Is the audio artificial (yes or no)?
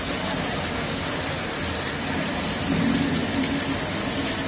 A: no